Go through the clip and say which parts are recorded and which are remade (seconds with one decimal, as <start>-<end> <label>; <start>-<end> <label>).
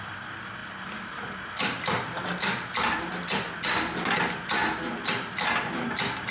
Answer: 0.0-6.3 recorded